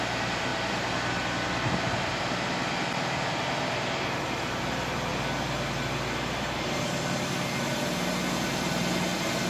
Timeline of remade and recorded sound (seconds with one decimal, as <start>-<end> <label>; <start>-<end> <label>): 0.0-9.5 recorded